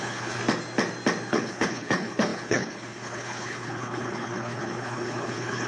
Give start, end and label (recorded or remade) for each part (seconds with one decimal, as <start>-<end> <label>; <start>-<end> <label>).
0.0-0.4 remade; 0.4-1.3 recorded; 1.3-5.7 remade